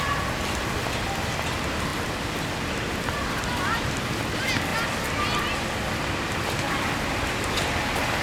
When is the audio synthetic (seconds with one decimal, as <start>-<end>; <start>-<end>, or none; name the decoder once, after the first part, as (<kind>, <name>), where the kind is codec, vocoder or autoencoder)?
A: none